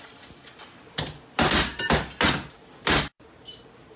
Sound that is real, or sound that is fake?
real